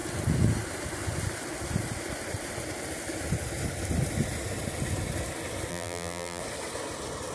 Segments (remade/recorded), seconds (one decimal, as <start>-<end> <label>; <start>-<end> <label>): 0.0-5.7 recorded; 5.7-6.4 remade; 6.4-7.3 recorded